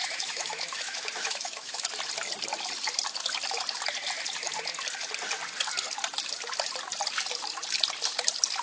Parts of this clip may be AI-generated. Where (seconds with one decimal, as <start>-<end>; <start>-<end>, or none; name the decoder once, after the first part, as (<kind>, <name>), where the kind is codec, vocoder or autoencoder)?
0.0-1.9 (autoencoder, DAC-VAE)